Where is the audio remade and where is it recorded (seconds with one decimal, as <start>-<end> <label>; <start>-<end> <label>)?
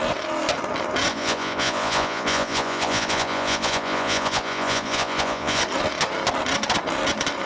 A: 0.0-1.1 recorded; 1.1-5.6 remade; 5.6-7.5 recorded